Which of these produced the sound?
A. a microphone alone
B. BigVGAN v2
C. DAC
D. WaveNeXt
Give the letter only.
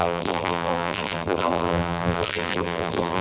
B